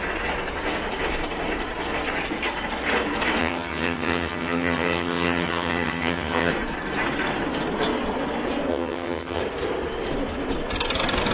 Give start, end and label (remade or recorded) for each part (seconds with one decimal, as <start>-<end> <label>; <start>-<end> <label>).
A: 0.0-3.4 recorded; 3.4-6.5 remade; 6.5-8.7 recorded; 8.7-9.4 remade; 9.4-11.3 recorded